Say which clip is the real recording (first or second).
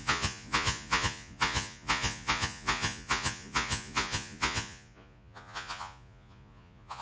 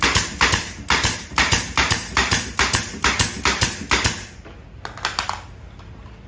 second